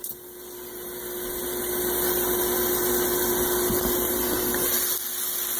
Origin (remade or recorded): recorded